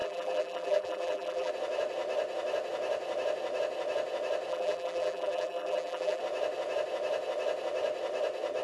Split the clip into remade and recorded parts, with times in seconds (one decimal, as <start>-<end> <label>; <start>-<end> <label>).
0.0-1.5 remade; 1.5-4.5 recorded; 4.5-6.2 remade; 6.2-8.6 recorded